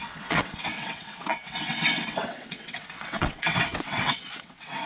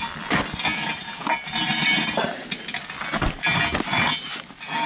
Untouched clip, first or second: second